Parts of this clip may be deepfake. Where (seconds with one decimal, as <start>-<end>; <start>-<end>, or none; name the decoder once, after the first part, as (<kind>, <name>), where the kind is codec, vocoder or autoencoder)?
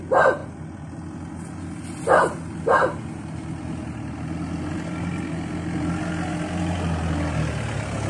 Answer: none